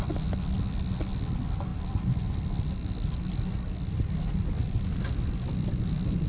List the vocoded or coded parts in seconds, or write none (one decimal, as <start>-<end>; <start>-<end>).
none